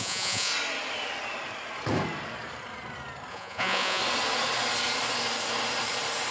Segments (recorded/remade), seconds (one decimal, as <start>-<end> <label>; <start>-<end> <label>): 0.0-0.5 remade; 0.5-3.3 recorded; 3.3-4.0 remade; 4.0-6.3 recorded